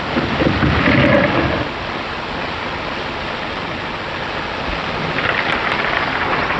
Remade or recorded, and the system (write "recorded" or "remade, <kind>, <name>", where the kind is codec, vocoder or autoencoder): recorded